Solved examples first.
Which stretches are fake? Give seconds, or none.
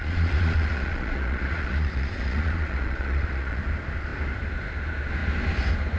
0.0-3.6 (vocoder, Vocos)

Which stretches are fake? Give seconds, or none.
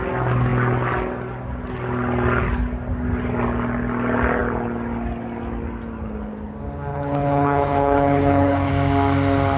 6.9-8.7 (codec, HILCodec)